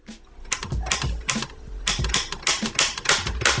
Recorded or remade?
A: recorded